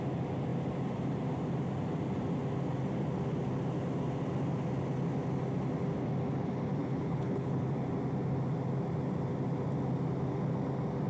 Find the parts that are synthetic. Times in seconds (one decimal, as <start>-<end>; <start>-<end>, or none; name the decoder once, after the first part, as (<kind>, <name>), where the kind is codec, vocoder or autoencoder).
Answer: 6.8-7.7 (codec, HILCodec)